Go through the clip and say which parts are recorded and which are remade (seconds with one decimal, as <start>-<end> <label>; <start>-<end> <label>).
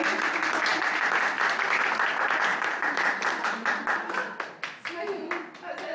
0.0-2.5 recorded; 2.5-3.3 remade; 3.3-5.9 recorded